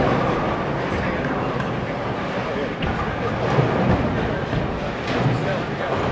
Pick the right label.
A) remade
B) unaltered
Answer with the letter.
B